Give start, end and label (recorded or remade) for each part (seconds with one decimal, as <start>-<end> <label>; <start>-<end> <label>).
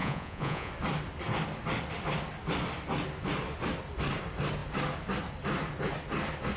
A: 0.0-0.7 remade; 0.7-6.6 recorded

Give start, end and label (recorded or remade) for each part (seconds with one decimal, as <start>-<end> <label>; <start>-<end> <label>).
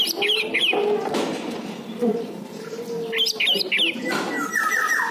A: 0.0-5.1 recorded